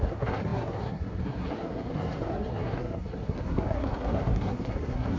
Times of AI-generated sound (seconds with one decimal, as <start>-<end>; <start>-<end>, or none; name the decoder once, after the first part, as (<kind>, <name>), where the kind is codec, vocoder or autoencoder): 0.0-5.2 (codec, SNAC)